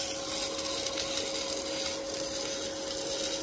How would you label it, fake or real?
real